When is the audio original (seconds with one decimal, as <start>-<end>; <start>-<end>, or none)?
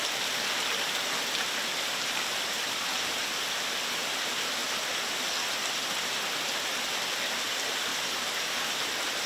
0.0-9.3